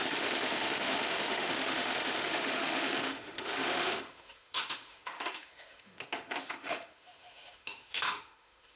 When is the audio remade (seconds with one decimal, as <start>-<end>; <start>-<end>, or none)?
0.0-8.8